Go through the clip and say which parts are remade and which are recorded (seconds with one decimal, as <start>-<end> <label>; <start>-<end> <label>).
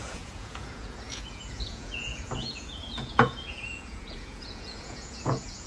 0.0-5.7 remade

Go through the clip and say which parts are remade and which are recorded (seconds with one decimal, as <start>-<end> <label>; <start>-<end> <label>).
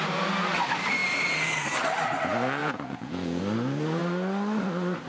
0.0-2.6 recorded; 2.6-3.4 remade; 3.4-5.1 recorded